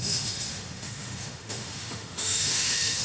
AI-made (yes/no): yes